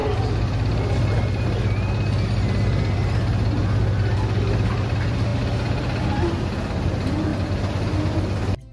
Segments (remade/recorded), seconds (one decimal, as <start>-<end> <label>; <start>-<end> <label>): 0.0-1.1 remade; 1.1-8.7 recorded